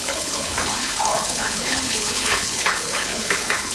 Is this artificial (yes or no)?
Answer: yes